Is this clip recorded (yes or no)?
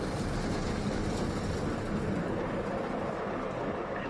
yes